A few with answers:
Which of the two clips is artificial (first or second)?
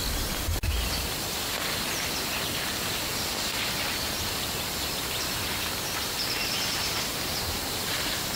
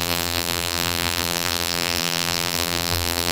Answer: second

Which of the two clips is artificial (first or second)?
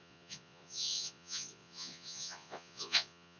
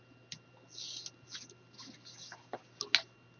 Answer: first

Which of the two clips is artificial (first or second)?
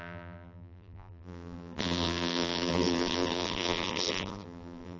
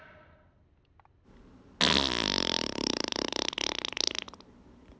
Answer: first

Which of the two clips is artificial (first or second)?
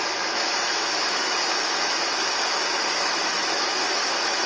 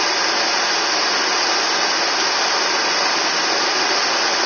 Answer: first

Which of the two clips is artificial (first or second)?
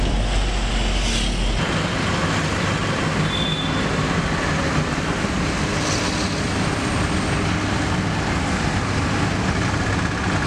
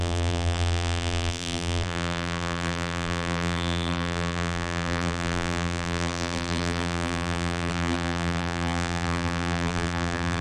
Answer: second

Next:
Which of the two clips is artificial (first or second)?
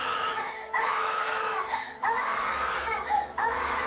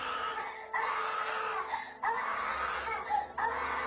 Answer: first